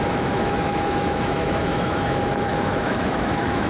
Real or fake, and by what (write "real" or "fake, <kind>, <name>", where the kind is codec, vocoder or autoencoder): fake, autoencoder, DAC-VAE